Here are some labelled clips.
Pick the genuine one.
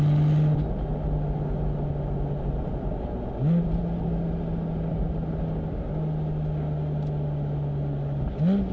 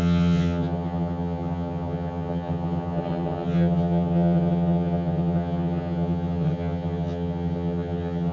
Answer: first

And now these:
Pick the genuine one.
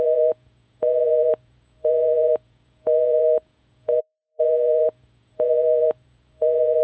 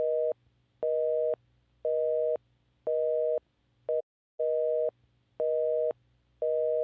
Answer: second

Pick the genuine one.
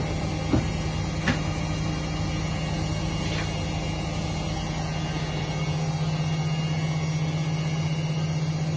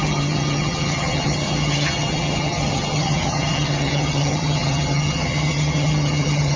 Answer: first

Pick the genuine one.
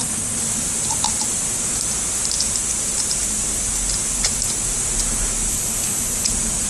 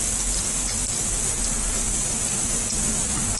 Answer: second